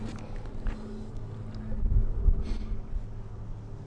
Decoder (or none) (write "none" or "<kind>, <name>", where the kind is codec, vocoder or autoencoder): none